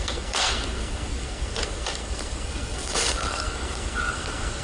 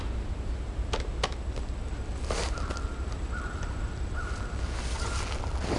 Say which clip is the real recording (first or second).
second